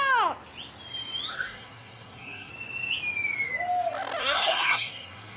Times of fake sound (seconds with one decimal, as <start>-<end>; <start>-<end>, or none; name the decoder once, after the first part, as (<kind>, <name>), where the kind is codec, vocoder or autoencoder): 1.3-2.5 (codec, SNAC); 4.2-5.4